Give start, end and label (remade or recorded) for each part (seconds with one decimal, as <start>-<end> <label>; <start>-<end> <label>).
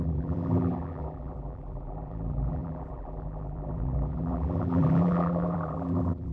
0.0-6.3 remade